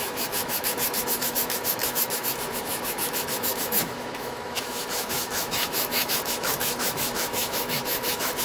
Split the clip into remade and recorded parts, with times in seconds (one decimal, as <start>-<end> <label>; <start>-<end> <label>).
0.0-8.4 remade

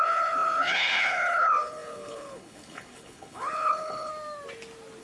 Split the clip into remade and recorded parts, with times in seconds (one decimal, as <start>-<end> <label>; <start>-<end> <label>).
0.0-4.1 remade; 4.1-5.0 recorded